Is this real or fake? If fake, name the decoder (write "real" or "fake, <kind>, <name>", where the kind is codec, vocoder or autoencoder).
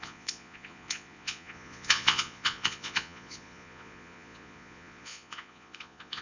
fake, vocoder, Vocos